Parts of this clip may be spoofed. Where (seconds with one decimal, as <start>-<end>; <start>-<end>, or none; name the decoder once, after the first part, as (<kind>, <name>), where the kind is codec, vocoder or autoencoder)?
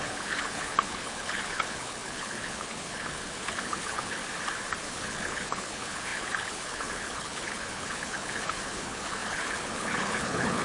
0.0-4.2 (codec, HILCodec); 4.8-10.6